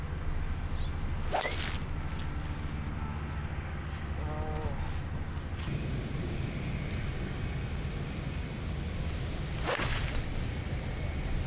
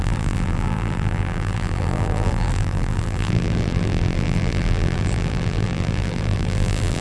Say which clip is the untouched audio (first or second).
first